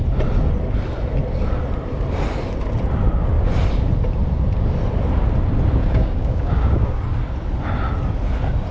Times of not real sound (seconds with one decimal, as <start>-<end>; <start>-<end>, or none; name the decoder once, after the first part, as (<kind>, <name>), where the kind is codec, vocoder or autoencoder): 5.8-7.0 (codec, DAC)